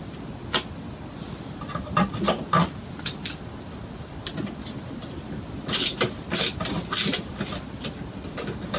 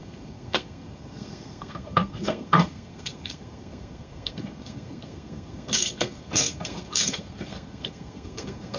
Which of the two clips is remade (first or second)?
second